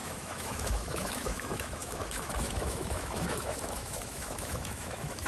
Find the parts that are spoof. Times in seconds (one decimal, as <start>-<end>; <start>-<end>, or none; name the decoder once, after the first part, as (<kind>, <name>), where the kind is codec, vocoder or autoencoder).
0.0-5.3 (autoencoder, DAC-VAE)

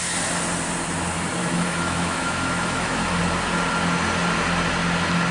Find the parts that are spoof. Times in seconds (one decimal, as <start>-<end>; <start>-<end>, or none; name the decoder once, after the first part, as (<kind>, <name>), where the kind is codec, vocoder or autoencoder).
1.4-3.2 (autoencoder, DAC-VAE)

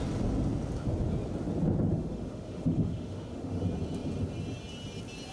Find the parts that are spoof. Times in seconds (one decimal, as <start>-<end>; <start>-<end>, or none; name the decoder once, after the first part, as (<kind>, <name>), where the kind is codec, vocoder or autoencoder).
1.9-3.6 (autoencoder, DAC-VAE)

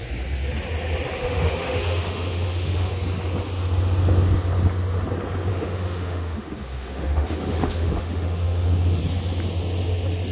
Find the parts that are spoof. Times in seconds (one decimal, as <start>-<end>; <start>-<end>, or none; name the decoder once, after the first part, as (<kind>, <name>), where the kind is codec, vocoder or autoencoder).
1.2-2.9 (autoencoder, DAC-VAE); 5.5-9.0